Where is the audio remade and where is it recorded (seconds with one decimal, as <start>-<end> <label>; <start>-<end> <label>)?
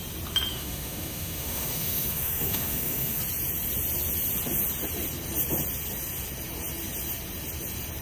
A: 0.0-0.5 recorded; 0.5-3.2 remade; 3.2-8.0 recorded